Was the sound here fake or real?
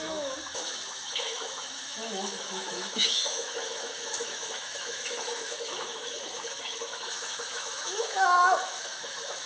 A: fake